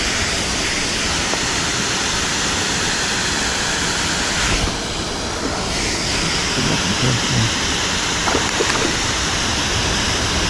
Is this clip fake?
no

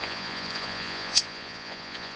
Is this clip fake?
yes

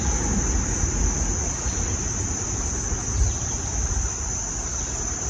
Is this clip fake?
no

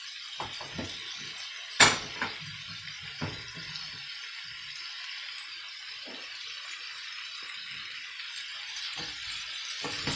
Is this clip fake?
no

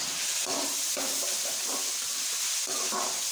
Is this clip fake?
no